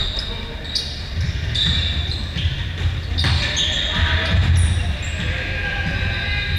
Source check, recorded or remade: recorded